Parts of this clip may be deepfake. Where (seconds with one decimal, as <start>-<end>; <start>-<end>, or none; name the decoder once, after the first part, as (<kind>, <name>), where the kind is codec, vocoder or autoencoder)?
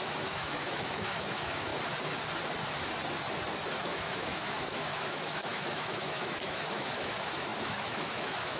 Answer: 0.0-1.7 (autoencoder, DAC-VAE); 3.8-8.6